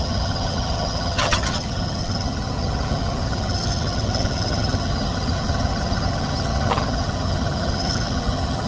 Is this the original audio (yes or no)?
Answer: no